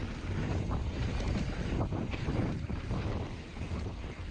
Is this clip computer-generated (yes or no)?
no